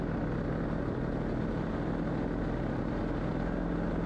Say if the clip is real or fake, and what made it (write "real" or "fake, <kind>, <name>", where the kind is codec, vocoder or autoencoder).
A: real